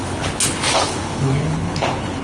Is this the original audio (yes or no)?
no